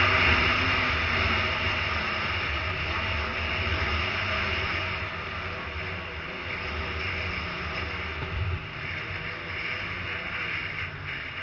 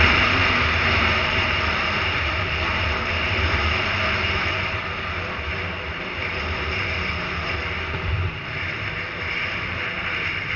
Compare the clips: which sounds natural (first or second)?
first